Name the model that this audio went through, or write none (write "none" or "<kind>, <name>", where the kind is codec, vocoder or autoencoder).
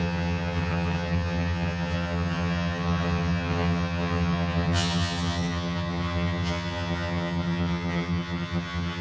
vocoder, HiFi-GAN